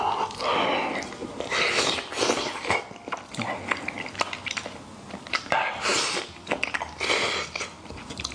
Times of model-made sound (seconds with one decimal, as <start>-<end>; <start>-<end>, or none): none

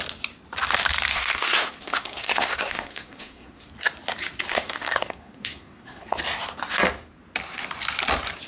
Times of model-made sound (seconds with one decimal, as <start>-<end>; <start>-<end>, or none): 1.1-3.7; 4.5-6.2

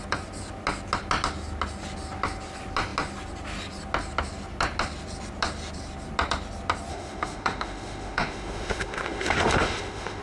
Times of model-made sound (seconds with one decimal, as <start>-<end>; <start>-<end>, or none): 6.9-10.2

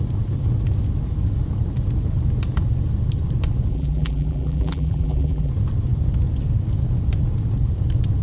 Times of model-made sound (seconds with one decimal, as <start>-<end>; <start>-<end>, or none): 3.7-5.5

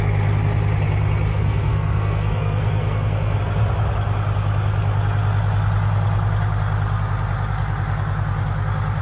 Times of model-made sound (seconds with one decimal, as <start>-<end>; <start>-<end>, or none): 1.3-3.4

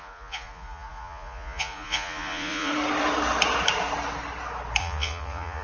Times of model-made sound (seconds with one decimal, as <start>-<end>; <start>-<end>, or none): 0.0-2.7; 4.8-5.6

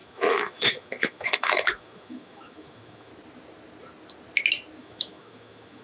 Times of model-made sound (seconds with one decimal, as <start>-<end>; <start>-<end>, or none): 0.0-3.1; 4.8-5.8